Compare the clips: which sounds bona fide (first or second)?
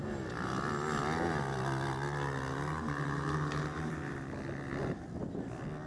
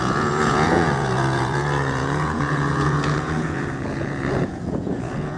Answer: first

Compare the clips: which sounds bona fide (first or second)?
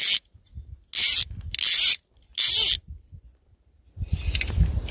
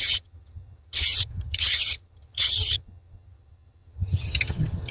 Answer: first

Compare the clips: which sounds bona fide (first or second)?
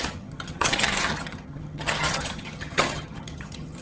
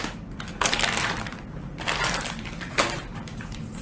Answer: second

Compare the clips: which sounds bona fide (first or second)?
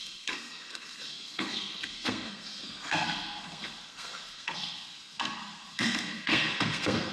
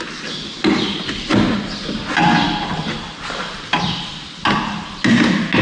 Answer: second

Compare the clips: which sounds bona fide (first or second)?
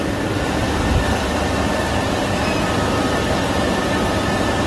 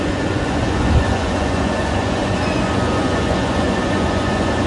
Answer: first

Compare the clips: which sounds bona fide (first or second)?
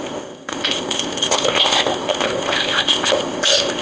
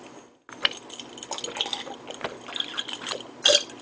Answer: second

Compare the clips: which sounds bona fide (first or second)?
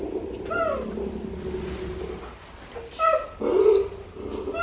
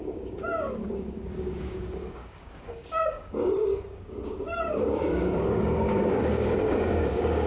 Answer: first